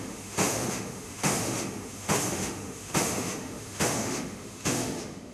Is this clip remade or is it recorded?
remade